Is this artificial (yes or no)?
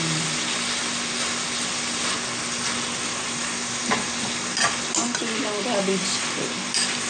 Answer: no